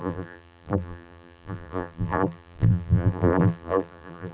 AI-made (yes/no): yes